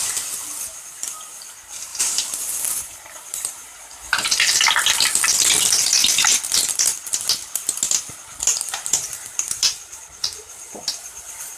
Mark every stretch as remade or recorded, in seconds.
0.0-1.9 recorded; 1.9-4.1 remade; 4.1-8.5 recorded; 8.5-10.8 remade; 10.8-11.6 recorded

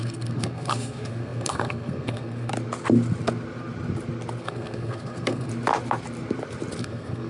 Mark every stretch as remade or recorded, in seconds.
0.0-2.5 remade; 2.5-4.4 recorded; 4.4-5.5 remade; 5.5-6.8 recorded; 6.8-7.3 remade

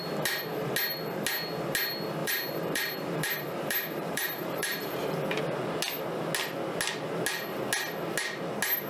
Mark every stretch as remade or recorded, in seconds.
0.0-2.2 recorded; 2.2-5.4 remade; 5.4-8.9 recorded

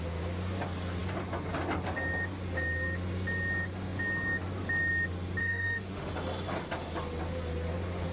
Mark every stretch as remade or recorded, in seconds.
0.0-5.4 recorded; 5.4-6.1 remade; 6.1-8.1 recorded

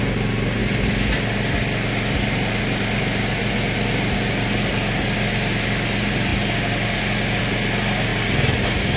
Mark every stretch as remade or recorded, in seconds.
0.0-9.0 recorded

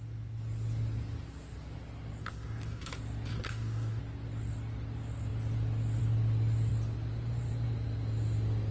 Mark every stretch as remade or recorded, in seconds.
0.0-2.2 recorded; 2.2-2.9 remade; 2.9-3.3 recorded; 3.3-4.0 remade; 4.0-8.7 recorded

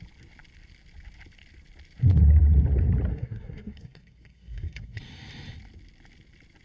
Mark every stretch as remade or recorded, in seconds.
0.0-3.1 recorded; 3.1-5.0 remade; 5.0-6.6 recorded

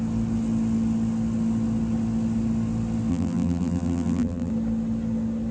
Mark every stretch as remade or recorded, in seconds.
0.0-3.1 recorded; 3.1-4.5 remade; 4.5-5.5 recorded